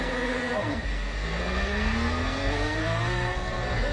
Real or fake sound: fake